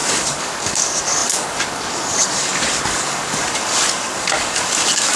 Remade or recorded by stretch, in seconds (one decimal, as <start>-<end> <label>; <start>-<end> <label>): 0.0-5.2 remade